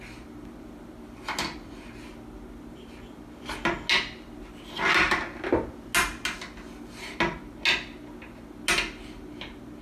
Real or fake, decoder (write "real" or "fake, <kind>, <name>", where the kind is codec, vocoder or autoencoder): real